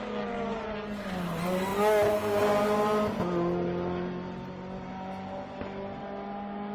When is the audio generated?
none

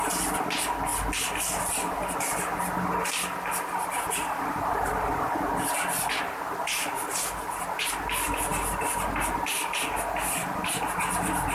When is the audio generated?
0.9-6.1 (vocoder, BigVGAN v2); 8.5-9.8